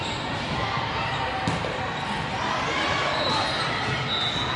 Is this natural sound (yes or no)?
yes